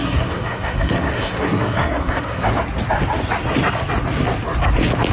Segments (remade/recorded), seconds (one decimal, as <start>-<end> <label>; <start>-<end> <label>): 0.0-2.5 remade; 2.5-5.1 recorded